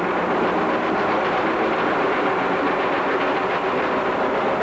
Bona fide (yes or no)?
no